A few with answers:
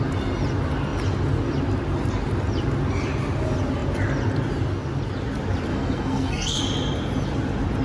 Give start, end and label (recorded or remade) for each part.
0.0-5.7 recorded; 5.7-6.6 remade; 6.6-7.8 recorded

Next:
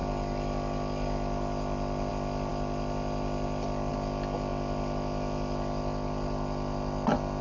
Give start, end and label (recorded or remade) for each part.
0.0-7.4 recorded

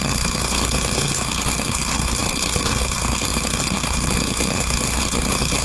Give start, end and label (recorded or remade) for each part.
0.0-5.6 remade

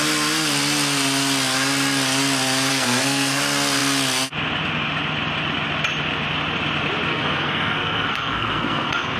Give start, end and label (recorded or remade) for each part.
0.0-2.7 recorded; 2.7-3.4 remade; 3.4-7.1 recorded; 7.1-9.2 remade

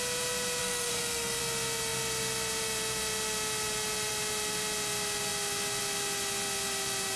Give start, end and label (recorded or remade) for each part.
0.0-0.6 recorded; 0.6-1.4 remade; 1.4-7.2 recorded

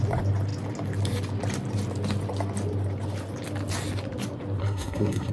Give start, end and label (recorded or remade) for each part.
0.0-4.6 recorded; 4.6-5.3 remade

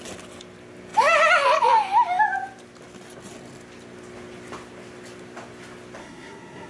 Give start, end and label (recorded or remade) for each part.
0.0-6.0 recorded; 6.0-6.7 remade

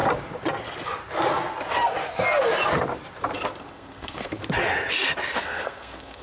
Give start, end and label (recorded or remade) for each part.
0.0-3.7 recorded; 3.7-4.4 remade; 4.4-5.4 recorded; 5.4-6.2 remade